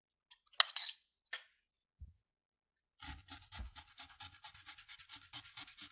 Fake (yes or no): no